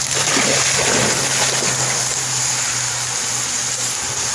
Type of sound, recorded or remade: recorded